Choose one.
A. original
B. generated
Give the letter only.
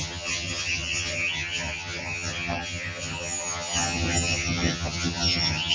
B